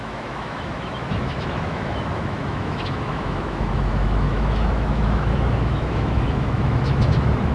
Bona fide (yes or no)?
no